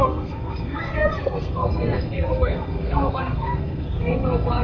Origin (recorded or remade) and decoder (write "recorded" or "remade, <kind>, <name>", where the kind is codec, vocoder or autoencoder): remade, codec, SNAC